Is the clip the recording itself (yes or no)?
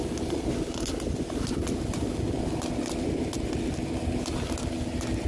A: yes